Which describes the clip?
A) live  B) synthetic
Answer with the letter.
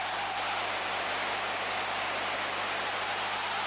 A